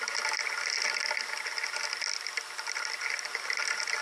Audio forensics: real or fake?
real